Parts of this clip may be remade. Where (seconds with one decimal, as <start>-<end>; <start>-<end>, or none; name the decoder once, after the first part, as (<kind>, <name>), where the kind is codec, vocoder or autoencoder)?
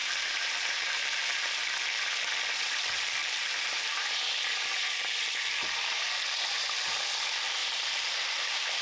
0.0-1.7 (vocoder, BigVGAN v2); 3.2-4.2; 7.6-8.8